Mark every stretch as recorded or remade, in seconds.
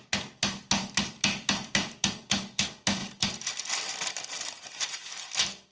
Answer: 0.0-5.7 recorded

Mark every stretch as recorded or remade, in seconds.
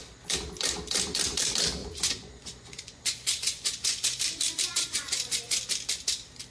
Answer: 0.0-1.8 recorded; 1.8-4.2 remade; 4.2-4.7 recorded; 4.7-5.6 remade; 5.6-6.5 recorded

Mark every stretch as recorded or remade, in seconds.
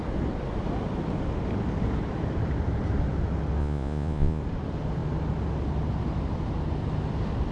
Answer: 0.0-3.6 recorded; 3.6-4.4 remade; 4.4-7.5 recorded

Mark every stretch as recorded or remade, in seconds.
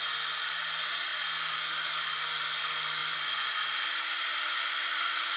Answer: 0.0-3.0 recorded; 3.0-3.6 remade; 3.6-5.4 recorded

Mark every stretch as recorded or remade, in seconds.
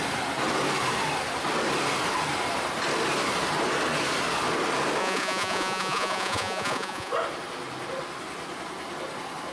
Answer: 0.0-5.0 recorded; 5.0-7.1 remade; 7.1-9.5 recorded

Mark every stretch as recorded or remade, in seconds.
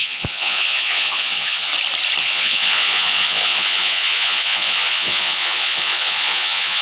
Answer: 0.0-1.7 remade; 1.7-2.2 recorded; 2.2-6.8 remade